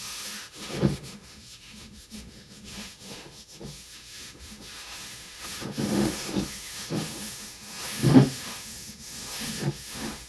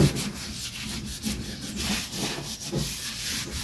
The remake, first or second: first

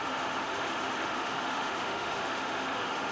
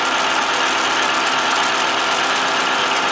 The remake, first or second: first